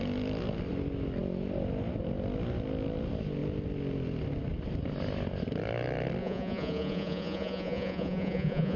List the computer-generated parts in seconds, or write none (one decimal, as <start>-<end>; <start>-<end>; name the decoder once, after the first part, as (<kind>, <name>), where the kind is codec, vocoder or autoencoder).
6.2-8.8 (vocoder, Vocos)